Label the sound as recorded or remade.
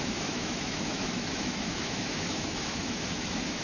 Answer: remade